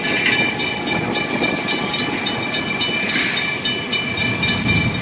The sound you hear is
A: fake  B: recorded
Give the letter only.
B